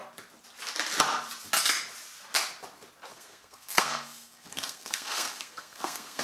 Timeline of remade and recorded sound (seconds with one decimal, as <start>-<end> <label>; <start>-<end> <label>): 0.0-3.1 recorded; 3.1-6.2 remade

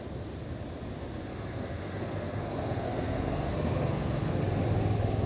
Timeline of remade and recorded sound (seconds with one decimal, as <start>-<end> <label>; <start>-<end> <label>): 0.0-1.2 recorded; 1.2-4.4 remade; 4.4-5.3 recorded

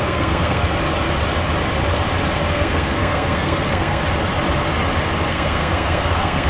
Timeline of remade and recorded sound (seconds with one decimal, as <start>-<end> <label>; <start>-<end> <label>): 0.0-0.6 remade; 0.6-2.5 recorded; 2.5-4.0 remade; 4.0-5.3 recorded; 5.3-6.5 remade